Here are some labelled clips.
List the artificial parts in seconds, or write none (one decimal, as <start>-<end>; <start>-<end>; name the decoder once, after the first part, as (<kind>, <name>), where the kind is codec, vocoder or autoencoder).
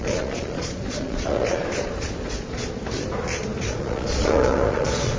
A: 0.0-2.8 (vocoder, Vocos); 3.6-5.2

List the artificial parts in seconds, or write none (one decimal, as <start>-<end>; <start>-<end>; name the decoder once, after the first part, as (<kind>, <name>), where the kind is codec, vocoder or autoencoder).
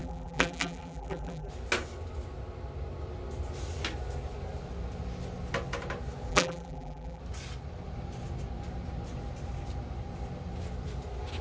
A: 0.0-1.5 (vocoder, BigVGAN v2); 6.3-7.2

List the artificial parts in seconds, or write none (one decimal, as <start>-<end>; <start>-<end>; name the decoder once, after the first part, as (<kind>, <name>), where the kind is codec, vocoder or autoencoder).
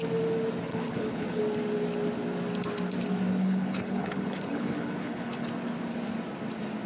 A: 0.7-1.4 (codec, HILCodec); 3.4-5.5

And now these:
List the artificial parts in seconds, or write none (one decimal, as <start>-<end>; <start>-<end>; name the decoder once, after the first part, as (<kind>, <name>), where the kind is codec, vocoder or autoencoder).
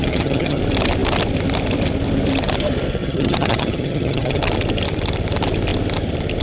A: 0.0-0.6 (vocoder, HiFi-GAN); 3.0-4.4